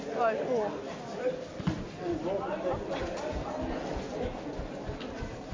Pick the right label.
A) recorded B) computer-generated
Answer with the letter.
A